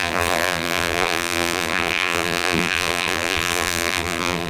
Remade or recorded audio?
remade